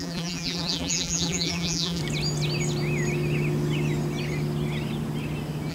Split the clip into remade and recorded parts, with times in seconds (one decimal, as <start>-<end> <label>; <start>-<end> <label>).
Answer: 0.0-2.0 remade; 2.0-5.7 recorded